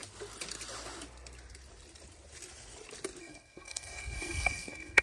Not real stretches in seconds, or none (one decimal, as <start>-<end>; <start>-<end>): 3.2-5.0